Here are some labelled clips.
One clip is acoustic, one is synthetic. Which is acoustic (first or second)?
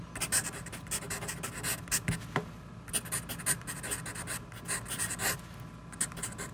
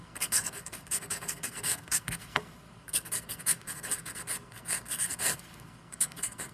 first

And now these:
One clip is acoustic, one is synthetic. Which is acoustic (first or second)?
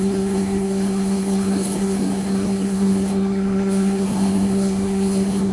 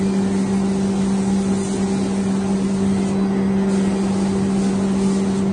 second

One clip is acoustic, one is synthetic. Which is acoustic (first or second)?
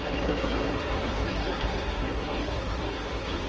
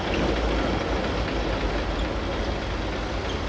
second